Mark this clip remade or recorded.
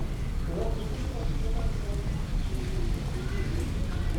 recorded